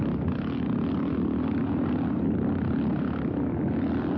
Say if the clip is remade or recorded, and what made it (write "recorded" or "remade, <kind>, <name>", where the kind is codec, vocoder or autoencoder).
recorded